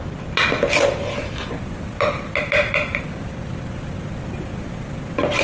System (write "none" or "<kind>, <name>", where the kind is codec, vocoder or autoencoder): none